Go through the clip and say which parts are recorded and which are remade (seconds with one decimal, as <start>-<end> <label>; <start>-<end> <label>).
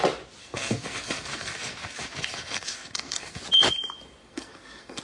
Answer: 0.0-0.4 recorded; 0.4-3.4 remade; 3.4-4.2 recorded; 4.2-5.0 remade